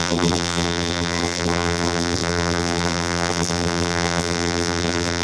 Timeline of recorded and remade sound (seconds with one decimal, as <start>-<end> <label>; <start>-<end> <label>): 0.0-5.2 remade